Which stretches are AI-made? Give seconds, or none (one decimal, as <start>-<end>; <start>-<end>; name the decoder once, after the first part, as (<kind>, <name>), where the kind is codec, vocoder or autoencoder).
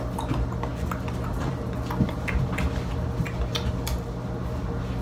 none